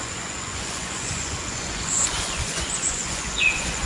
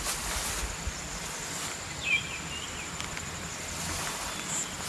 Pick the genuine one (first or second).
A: second